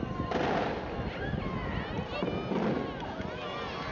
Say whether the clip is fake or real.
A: real